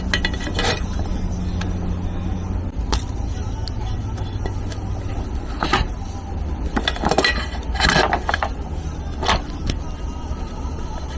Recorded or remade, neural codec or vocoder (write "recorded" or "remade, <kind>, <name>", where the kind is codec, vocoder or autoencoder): recorded